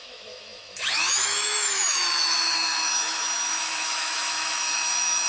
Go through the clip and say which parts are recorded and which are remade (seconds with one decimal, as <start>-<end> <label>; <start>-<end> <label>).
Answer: 0.0-5.3 remade